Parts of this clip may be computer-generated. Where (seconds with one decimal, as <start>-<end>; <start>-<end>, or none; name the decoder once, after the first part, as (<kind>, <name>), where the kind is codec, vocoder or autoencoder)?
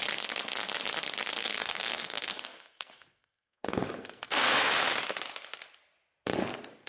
1.4-4.5 (codec, SNAC)